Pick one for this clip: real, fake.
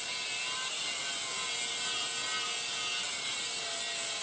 real